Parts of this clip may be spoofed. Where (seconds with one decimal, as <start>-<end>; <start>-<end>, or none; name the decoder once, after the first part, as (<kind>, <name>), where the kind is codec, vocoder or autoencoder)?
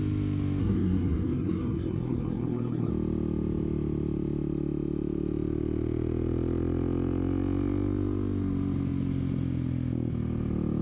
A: 0.6-2.9 (codec, SNAC)